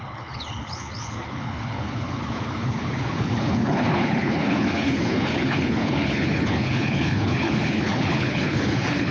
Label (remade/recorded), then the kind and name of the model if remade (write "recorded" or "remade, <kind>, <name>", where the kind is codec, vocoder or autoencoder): remade, codec, HILCodec